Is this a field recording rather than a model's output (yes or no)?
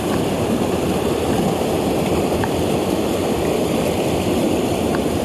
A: yes